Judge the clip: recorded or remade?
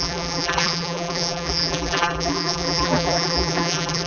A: remade